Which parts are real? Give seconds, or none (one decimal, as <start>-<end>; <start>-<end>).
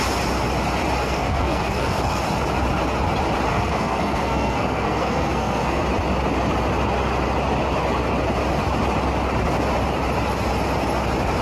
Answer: 0.0-1.0; 2.2-3.5; 5.8-11.4